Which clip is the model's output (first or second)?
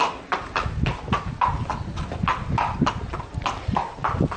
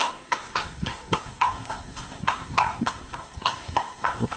second